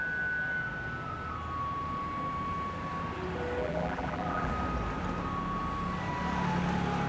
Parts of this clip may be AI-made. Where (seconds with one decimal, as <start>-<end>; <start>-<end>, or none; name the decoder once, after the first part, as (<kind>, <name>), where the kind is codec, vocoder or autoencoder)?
3.6-4.5 (vocoder, BigVGAN v2)